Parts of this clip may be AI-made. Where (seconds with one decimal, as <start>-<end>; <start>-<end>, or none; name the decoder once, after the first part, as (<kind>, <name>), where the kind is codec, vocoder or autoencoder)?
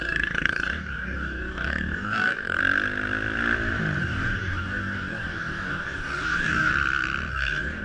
0.0-2.6 (codec, DAC); 4.0-6.7; 7.3-7.8